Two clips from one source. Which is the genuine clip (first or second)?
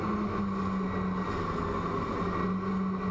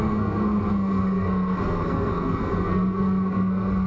first